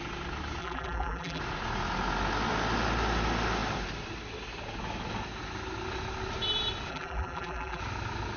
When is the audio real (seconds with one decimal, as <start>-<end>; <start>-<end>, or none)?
0.0-0.6; 1.4-6.9; 7.8-8.4